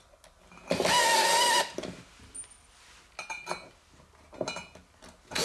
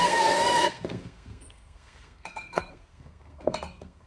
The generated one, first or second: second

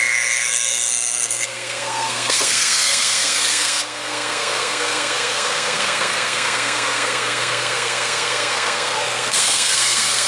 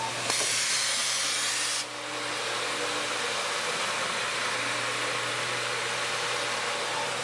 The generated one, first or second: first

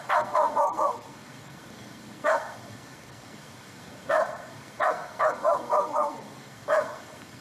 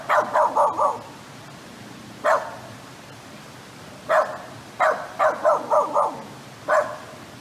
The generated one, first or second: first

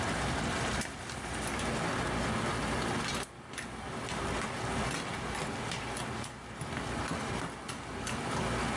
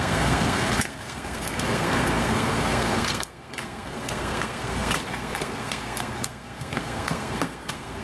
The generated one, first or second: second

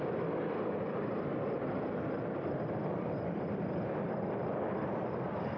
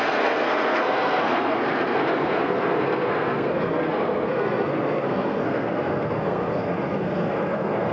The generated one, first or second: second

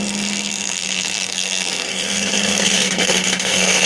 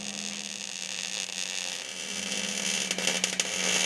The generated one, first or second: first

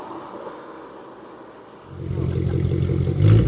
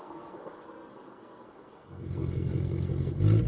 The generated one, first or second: second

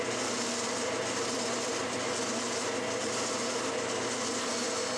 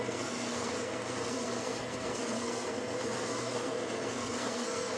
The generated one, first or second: second